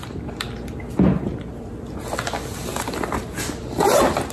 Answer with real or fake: real